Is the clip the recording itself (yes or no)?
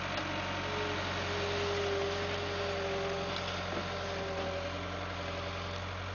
yes